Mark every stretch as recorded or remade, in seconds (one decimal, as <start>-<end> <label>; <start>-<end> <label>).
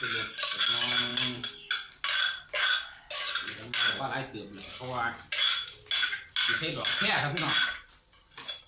0.0-6.7 recorded; 6.7-8.7 remade